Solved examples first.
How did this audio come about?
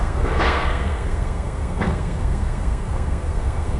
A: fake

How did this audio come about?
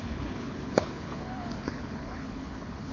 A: fake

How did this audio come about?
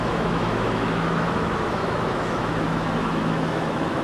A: fake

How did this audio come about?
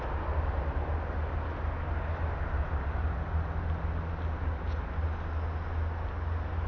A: real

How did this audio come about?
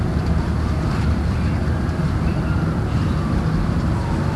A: real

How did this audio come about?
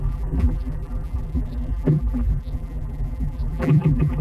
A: fake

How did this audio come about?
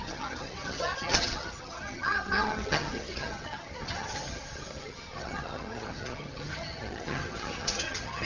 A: fake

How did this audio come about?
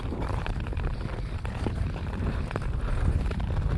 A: fake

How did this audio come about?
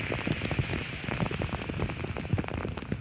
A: real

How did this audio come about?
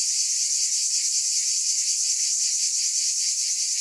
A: real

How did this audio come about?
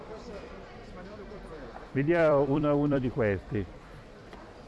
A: fake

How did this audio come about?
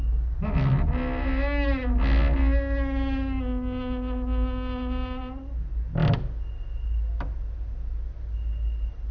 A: real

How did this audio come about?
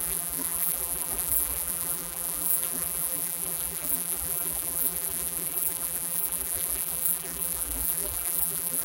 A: fake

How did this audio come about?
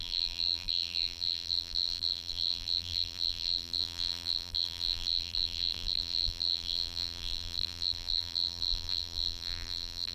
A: fake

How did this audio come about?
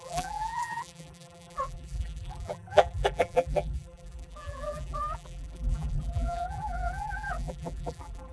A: fake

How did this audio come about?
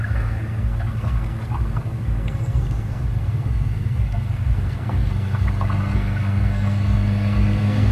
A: fake